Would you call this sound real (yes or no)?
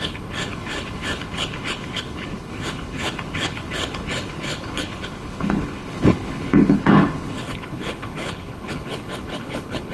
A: no